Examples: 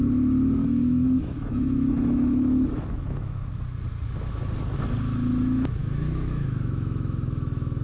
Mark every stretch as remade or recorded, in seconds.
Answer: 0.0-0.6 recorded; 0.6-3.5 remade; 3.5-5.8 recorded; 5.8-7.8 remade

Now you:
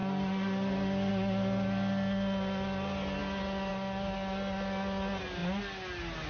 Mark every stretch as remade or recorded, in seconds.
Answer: 0.0-6.3 recorded

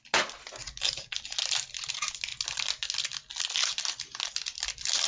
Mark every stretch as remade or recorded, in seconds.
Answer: 0.0-5.1 recorded